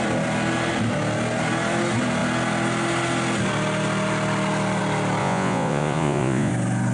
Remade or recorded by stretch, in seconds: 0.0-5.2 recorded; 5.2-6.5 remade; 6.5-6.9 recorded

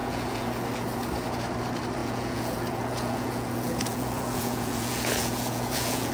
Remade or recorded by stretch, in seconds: 0.0-0.6 remade; 0.6-2.0 recorded; 2.0-6.1 remade

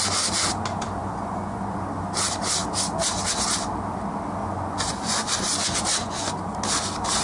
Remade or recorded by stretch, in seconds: 0.0-1.0 recorded; 1.0-1.8 remade; 1.8-4.4 recorded; 4.4-6.3 remade; 6.3-7.2 recorded